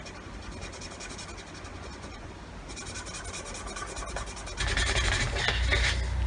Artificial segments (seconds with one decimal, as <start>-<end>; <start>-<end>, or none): 1.7-2.3

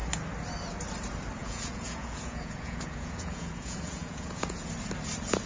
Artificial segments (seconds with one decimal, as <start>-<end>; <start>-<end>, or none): 1.4-4.7

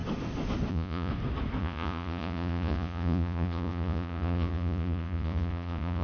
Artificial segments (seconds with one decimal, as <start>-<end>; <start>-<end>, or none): 0.7-1.1; 1.6-6.0

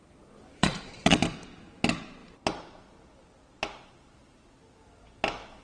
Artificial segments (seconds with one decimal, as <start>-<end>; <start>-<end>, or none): 0.6-1.2

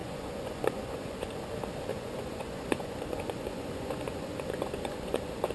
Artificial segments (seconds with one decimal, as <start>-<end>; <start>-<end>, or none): 0.0-1.5; 1.9-5.5

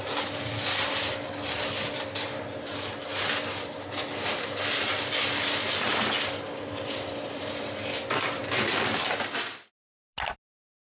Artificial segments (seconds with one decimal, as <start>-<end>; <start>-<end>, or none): none

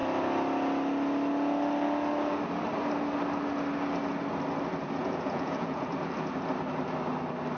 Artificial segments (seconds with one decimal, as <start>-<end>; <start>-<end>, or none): 5.0-5.9

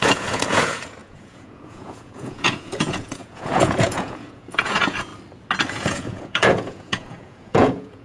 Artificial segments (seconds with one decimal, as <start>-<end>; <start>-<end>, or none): 0.0-5.1; 5.7-8.0